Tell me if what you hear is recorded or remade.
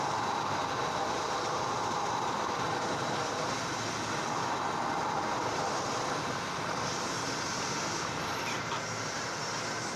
recorded